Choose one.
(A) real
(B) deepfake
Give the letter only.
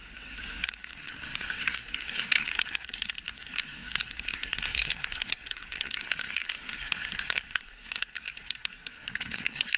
B